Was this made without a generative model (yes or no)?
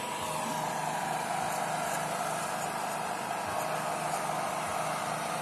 yes